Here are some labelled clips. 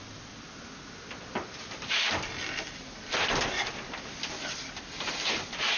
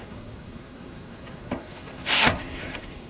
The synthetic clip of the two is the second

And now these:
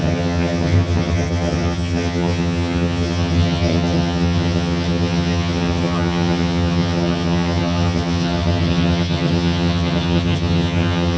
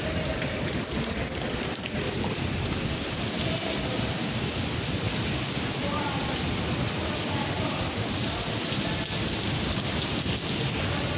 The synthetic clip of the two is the first